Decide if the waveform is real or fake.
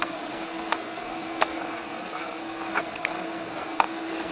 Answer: fake